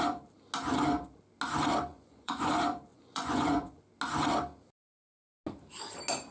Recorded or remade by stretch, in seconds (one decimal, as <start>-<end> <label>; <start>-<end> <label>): 0.0-1.9 recorded; 1.9-2.5 remade; 2.5-2.9 recorded; 2.9-3.8 remade; 3.8-6.3 recorded